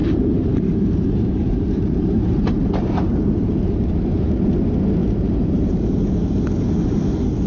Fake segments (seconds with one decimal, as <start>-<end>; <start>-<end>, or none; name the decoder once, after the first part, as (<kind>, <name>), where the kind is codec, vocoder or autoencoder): 0.0-4.3 (vocoder, BigVGAN v2); 5.0-5.9